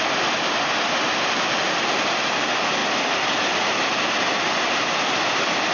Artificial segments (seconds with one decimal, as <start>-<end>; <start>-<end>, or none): none